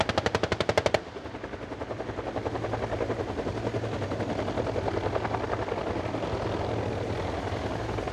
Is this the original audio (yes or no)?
yes